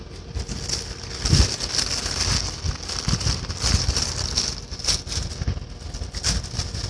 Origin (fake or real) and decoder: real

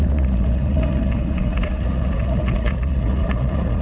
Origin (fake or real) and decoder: fake, vocoder, Vocos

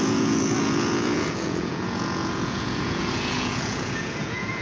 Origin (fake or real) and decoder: fake, vocoder, Vocos